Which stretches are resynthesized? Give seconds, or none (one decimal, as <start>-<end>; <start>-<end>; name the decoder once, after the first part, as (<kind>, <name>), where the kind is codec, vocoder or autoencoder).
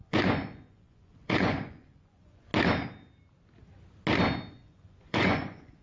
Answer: 0.0-2.5 (vocoder, Vocos); 4.5-5.8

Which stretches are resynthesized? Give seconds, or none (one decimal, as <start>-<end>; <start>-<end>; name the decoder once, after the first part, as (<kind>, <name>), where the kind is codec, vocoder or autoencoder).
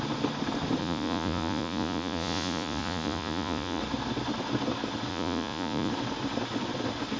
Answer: 0.8-3.8 (vocoder, Vocos); 5.1-5.9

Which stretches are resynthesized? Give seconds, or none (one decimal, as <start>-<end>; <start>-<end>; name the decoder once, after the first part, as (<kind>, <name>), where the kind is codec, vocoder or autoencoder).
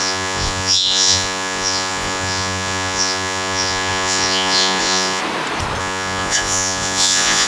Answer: 0.0-5.2 (vocoder, Vocos); 5.8-7.5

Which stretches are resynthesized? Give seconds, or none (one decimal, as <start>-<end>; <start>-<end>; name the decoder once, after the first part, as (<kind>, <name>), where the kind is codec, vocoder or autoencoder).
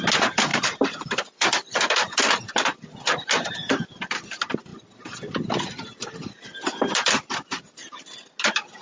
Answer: 0.5-2.8 (vocoder, BigVGAN v2); 4.7-7.6